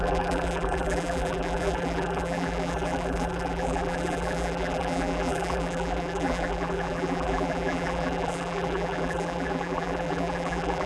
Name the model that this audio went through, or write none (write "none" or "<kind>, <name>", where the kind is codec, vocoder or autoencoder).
vocoder, BigVGAN v2